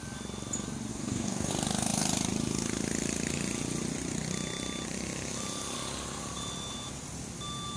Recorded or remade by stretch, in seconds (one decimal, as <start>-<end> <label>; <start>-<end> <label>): 0.0-0.9 recorded; 0.9-1.5 remade; 1.5-7.8 recorded

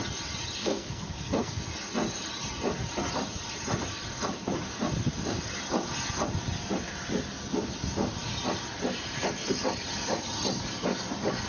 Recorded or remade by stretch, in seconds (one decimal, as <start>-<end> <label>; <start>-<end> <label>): 0.0-0.6 recorded; 0.6-1.6 remade; 1.6-11.5 recorded

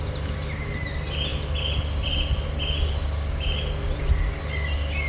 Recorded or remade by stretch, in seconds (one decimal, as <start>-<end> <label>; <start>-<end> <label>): 0.0-5.1 recorded

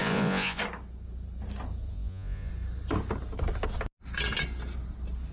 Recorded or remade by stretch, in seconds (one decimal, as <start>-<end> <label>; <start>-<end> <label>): 0.0-0.6 remade; 0.6-1.9 recorded; 1.9-2.5 remade; 2.5-5.3 recorded